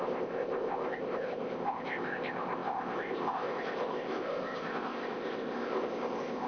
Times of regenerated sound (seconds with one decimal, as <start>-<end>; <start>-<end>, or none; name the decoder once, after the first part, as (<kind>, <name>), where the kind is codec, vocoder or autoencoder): 0.0-6.5 (codec, ZipCodec)